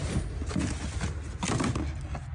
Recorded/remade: recorded